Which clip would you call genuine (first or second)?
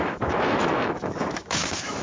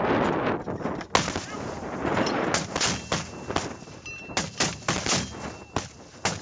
second